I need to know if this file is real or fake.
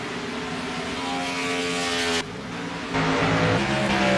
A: real